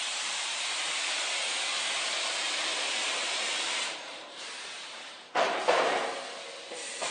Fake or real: fake